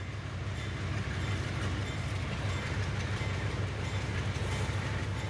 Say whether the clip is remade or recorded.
recorded